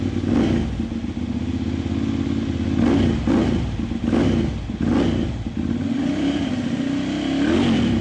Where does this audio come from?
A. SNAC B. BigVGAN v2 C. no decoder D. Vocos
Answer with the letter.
C